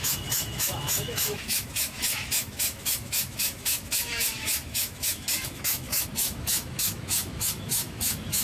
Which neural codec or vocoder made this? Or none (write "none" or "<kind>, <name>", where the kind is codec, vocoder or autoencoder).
autoencoder, DAC-VAE